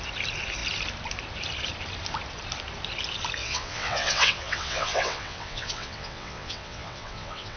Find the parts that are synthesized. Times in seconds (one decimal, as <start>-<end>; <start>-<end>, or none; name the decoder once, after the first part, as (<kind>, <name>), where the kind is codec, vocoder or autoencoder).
3.4-7.6 (vocoder, WaveNeXt)